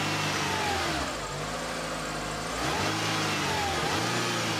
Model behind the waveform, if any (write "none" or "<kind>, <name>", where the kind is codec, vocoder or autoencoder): none